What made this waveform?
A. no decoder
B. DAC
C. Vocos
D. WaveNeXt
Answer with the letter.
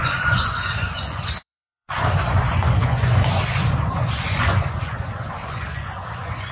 C